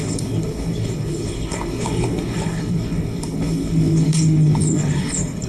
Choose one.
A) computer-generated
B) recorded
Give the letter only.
A